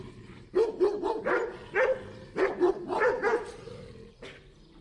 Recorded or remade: recorded